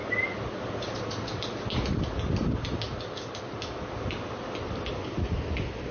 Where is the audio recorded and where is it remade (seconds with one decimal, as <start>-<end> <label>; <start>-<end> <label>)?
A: 0.0-5.9 recorded